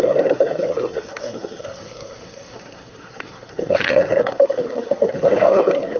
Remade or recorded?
remade